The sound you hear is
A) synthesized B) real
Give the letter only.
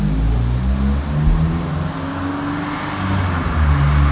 B